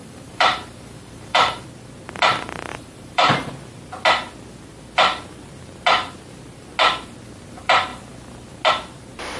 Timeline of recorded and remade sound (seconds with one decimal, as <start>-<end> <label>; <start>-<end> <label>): 0.0-1.6 remade; 1.6-2.7 recorded; 2.7-3.5 remade; 3.5-9.4 recorded